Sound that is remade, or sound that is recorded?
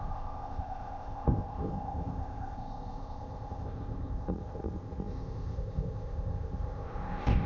remade